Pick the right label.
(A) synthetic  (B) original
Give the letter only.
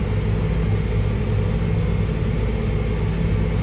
B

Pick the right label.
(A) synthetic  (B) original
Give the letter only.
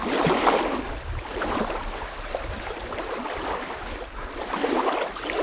B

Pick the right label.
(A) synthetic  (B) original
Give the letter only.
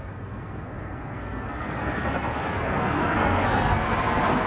A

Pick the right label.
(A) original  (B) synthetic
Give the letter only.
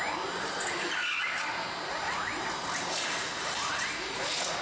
A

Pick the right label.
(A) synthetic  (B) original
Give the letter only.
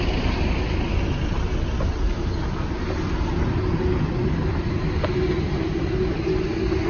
B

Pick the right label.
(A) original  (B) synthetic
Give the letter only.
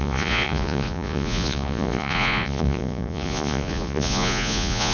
B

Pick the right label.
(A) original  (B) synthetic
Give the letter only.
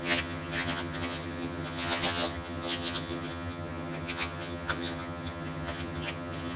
B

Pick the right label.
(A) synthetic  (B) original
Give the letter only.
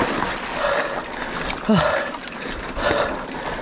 B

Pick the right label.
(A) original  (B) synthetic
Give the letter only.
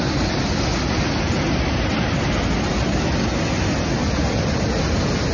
A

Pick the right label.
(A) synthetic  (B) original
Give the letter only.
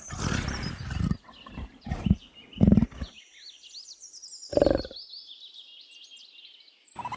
B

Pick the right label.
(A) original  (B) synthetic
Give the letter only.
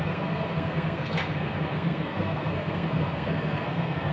B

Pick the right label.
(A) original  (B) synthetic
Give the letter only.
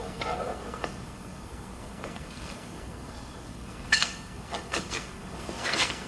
B